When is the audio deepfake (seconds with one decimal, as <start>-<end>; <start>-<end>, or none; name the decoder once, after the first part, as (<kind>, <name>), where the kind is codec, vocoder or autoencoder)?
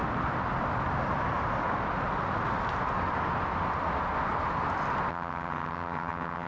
5.1-6.5 (vocoder, HiFi-GAN)